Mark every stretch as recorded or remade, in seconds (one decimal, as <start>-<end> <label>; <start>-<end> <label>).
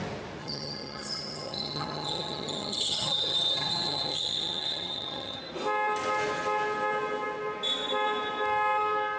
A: 0.0-0.4 recorded; 0.4-5.4 remade; 5.4-9.2 recorded